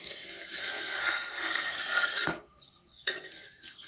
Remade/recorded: remade